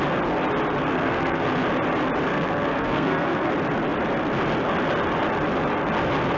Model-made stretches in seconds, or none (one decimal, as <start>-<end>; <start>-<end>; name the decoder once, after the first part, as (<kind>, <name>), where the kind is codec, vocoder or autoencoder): 0.9-1.4 (codec, SNAC); 2.3-3.5